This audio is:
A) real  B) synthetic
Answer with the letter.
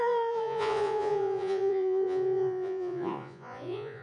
B